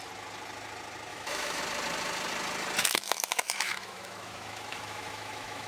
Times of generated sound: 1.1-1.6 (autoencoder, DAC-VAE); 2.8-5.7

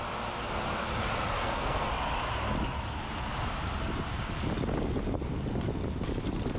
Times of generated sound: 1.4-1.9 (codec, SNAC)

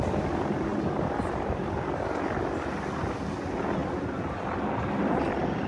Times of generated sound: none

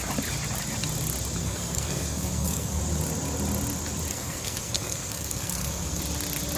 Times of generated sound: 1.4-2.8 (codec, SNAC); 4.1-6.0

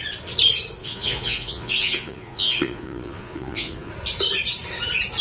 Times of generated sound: 0.8-3.9 (vocoder, Vocos)

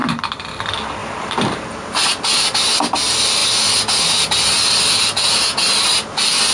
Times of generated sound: 0.0-0.6 (vocoder, BigVGAN v2); 1.0-2.0

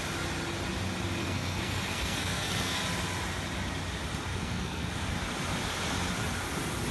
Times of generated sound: 1.2-2.8 (codec, SNAC); 4.3-5.1

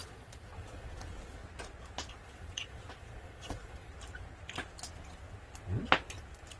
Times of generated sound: 0.0-1.4 (vocoder, Vocos); 2.1-3.9